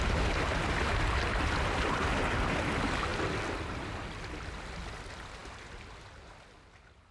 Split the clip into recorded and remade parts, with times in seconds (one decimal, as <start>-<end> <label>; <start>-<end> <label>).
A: 0.0-7.1 recorded